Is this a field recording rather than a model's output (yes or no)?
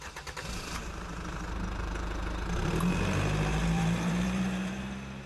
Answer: no